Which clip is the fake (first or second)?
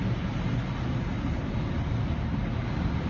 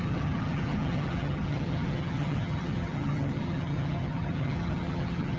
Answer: second